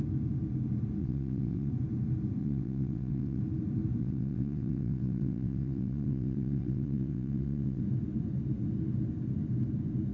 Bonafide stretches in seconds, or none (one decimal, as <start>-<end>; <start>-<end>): 0.0-1.0; 1.7-2.4; 3.4-4.0; 7.8-10.1